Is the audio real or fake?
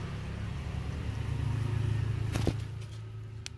real